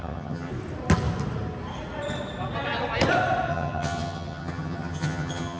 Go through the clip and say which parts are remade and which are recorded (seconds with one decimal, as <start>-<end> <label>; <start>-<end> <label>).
0.0-0.5 remade; 0.5-3.5 recorded; 3.5-5.6 remade